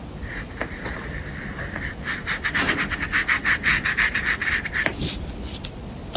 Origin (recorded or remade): recorded